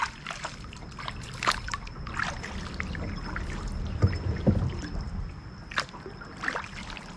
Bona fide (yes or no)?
yes